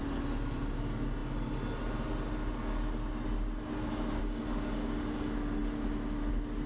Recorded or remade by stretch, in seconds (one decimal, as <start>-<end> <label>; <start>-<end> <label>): 0.0-4.2 recorded; 4.2-5.0 remade; 5.0-6.7 recorded